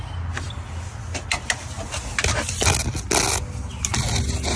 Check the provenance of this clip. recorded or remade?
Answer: recorded